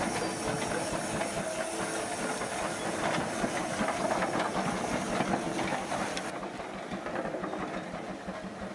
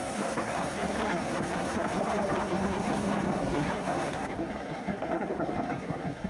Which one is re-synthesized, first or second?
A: second